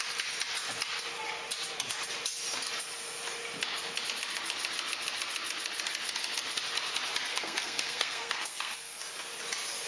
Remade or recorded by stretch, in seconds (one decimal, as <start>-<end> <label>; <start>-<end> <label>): 0.0-7.3 recorded; 7.3-9.0 remade; 9.0-9.9 recorded